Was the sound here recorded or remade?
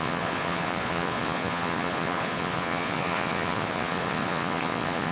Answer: remade